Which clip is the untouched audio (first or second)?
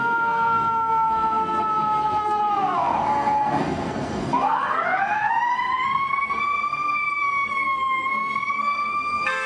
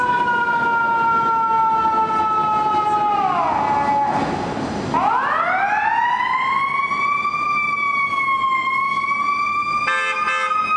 second